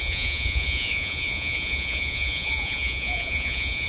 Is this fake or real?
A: fake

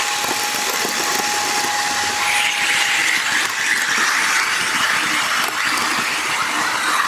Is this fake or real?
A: real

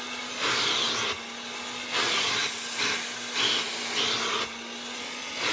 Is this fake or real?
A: real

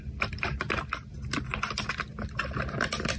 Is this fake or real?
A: real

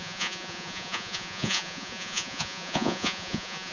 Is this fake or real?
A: fake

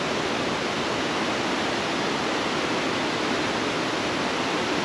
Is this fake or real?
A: real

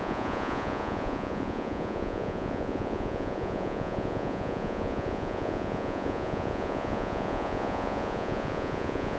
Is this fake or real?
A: fake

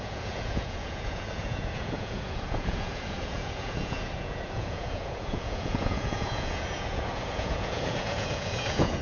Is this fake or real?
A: fake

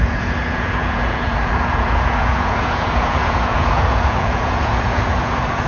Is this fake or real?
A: fake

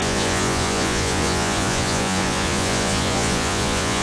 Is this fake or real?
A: fake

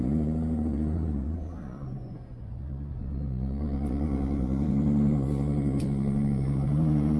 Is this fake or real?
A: fake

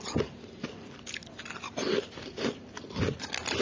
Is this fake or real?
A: real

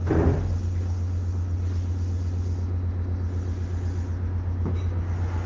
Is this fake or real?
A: real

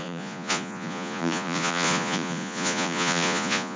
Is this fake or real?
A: fake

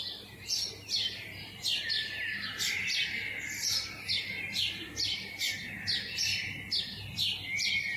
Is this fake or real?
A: real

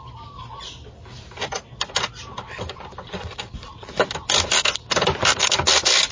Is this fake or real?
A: real